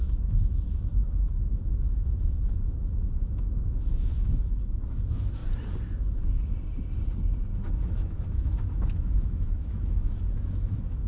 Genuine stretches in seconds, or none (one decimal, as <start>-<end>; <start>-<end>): 5.4-7.7